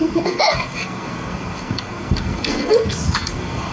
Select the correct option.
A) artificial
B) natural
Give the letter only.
A